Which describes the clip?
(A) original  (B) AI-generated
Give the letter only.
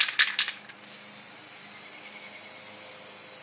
A